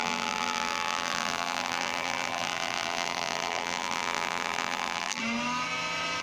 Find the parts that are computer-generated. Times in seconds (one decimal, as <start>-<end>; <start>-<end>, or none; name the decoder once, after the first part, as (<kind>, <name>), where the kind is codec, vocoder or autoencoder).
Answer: 0.0-5.2 (vocoder, BigVGAN v2)